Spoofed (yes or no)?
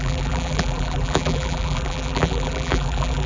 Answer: yes